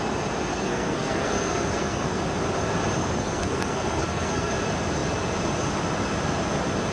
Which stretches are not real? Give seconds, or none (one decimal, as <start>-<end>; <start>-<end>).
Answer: 0.5-2.2; 3.0-4.5